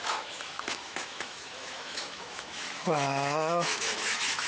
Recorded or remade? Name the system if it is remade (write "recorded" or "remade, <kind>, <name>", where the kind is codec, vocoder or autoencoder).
remade, autoencoder, DAC-VAE